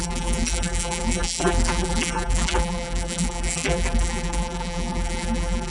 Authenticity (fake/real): fake